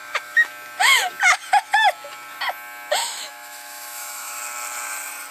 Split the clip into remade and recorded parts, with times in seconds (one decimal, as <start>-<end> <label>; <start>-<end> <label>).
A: 0.0-0.5 remade; 0.5-3.0 recorded; 3.0-4.4 remade; 4.4-5.3 recorded